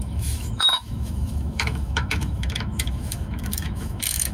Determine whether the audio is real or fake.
fake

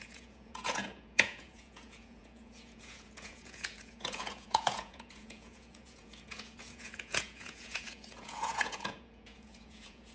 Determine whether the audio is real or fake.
fake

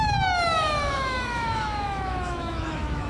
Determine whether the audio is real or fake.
fake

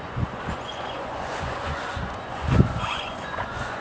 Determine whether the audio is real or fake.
fake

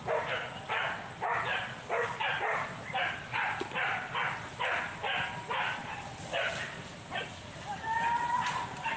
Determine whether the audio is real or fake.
real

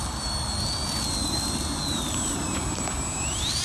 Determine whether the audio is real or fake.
real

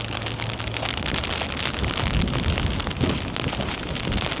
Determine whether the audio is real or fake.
real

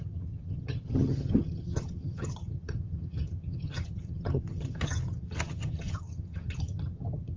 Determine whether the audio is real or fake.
fake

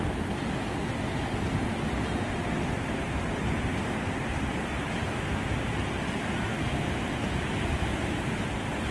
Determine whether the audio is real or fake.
real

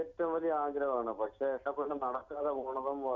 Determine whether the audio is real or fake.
real